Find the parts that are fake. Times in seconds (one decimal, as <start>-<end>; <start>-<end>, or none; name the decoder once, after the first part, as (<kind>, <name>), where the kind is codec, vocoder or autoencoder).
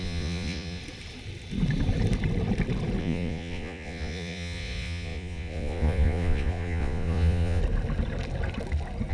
0.0-0.8 (vocoder, Vocos); 3.0-7.6